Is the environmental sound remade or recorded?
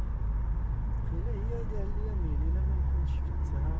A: recorded